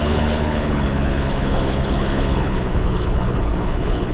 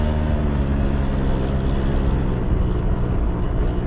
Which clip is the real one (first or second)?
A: second